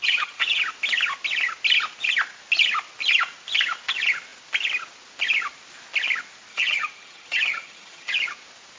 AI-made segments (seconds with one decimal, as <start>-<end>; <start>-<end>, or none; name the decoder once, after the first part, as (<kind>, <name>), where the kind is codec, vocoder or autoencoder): 0.0-0.6 (vocoder, HiFi-GAN); 6.5-8.1